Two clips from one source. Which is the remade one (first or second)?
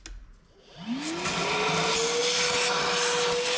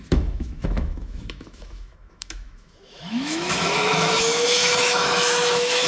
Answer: second